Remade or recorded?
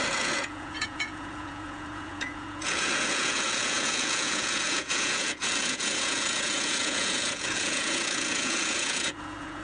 remade